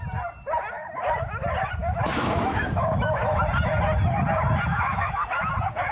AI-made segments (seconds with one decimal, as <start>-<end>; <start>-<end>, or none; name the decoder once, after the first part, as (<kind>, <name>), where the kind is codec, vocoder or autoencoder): 1.8-3.4 (autoencoder, DAC-VAE); 4.7-5.5